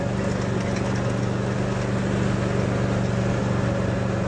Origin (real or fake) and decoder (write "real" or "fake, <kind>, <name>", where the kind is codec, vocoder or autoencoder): real